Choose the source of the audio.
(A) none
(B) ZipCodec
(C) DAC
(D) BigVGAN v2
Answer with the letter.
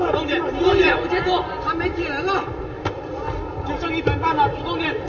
A